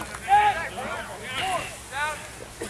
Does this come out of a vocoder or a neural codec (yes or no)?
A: no